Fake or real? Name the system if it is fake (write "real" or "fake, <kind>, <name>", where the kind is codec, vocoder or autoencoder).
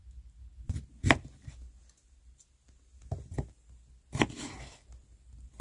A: real